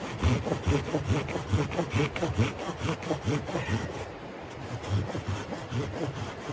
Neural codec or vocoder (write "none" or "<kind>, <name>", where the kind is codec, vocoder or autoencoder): none